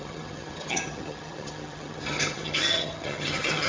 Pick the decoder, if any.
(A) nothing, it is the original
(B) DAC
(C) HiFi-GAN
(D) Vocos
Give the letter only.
C